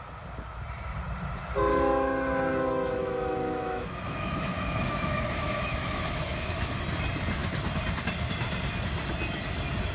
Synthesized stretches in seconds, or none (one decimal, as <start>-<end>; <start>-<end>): 1.7-6.8